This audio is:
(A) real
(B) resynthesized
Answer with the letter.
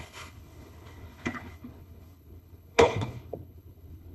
B